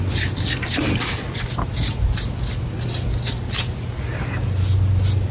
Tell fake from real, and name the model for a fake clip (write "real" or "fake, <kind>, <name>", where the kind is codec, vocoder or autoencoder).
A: real